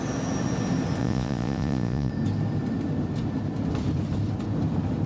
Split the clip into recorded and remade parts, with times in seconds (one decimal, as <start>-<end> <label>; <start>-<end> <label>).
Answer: 0.0-1.0 recorded; 1.0-2.1 remade; 2.1-5.1 recorded